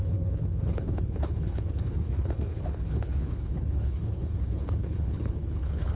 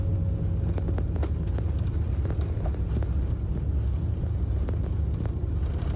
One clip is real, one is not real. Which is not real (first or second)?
first